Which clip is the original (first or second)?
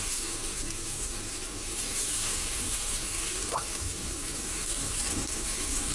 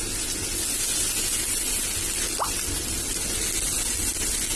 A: second